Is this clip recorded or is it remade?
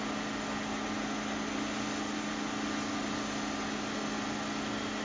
recorded